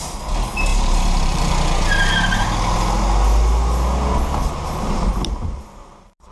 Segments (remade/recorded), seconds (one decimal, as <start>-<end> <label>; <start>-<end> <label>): 0.0-0.7 recorded; 0.7-1.5 remade; 1.5-4.4 recorded; 4.4-6.3 remade